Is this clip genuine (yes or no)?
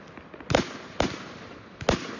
yes